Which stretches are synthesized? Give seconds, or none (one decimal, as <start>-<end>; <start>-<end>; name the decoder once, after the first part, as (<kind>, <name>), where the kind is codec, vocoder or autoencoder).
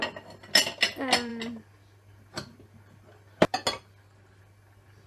none